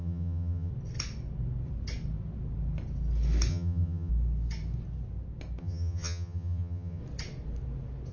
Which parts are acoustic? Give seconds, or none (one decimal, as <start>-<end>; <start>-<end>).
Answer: 0.7-3.5; 4.1-5.6; 7.0-8.1